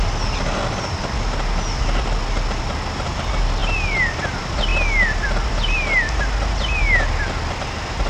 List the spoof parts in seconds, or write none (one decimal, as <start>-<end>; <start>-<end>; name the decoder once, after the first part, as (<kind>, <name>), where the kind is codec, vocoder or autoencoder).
none